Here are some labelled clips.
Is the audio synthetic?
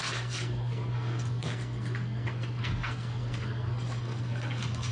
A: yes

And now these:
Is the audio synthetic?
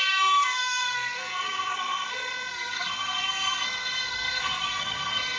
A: yes